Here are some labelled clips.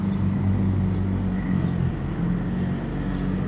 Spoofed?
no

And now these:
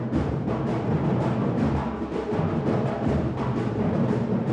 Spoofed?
yes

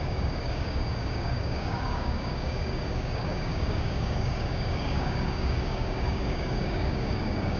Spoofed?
yes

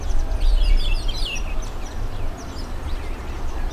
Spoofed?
no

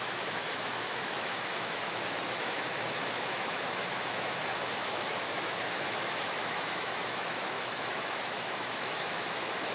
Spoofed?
yes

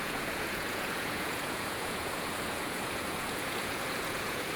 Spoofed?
yes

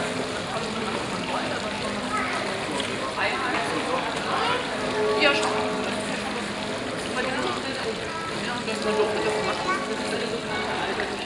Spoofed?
no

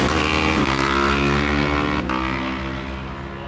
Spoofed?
no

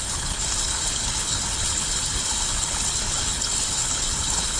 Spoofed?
yes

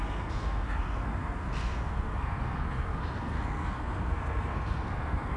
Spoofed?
yes